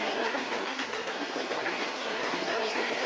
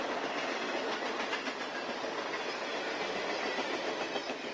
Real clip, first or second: second